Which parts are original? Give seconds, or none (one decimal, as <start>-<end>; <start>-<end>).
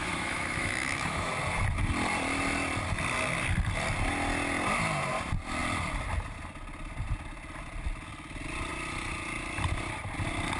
1.3-10.6